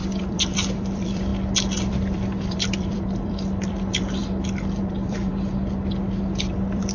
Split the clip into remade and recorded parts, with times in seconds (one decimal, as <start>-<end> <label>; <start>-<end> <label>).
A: 0.0-1.3 remade; 1.3-1.9 recorded; 1.9-4.2 remade; 4.2-4.8 recorded; 4.8-5.3 remade; 5.3-6.5 recorded; 6.5-6.9 remade